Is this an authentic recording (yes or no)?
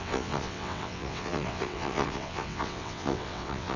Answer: no